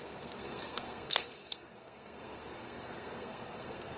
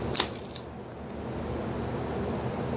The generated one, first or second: first